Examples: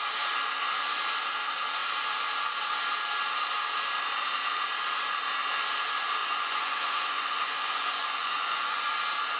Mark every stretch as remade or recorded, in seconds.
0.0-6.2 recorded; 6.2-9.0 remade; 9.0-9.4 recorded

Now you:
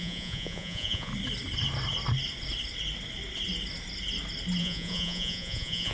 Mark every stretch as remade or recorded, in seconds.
0.0-1.1 remade; 1.1-4.6 recorded; 4.6-5.9 remade

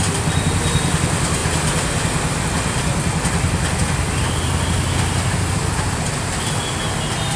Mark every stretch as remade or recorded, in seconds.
0.0-7.4 recorded

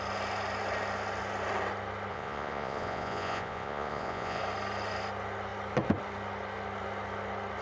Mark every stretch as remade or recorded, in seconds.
0.0-2.1 recorded; 2.1-4.4 remade; 4.4-7.6 recorded

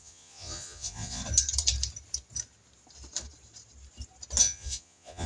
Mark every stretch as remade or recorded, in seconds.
0.0-1.2 remade; 1.2-4.4 recorded; 4.4-5.3 remade

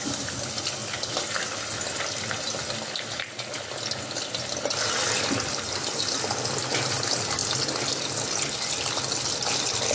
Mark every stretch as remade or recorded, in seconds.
0.0-9.9 recorded

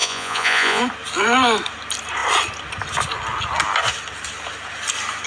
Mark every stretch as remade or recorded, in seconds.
0.0-0.8 remade; 0.8-5.3 recorded